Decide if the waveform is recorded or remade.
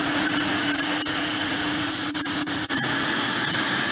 remade